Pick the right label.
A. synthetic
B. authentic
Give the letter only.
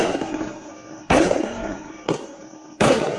A